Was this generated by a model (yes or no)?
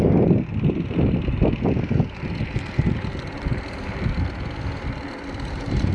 no